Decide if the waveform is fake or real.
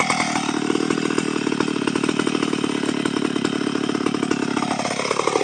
real